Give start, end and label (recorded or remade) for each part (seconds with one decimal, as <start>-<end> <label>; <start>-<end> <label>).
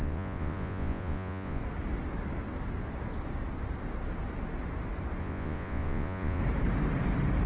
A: 0.0-1.6 remade; 1.6-5.2 recorded; 5.2-6.4 remade; 6.4-7.5 recorded